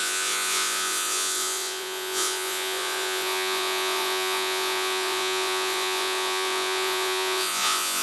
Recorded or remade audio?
remade